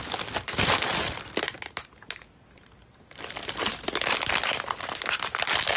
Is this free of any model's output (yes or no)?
yes